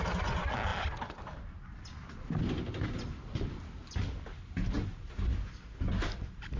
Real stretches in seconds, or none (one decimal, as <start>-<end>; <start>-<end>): 0.0-6.6